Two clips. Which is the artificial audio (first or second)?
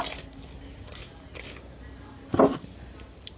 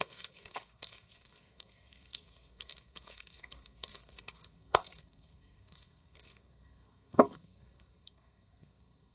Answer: second